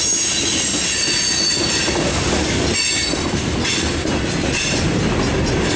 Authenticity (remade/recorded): recorded